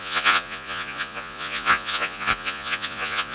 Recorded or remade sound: remade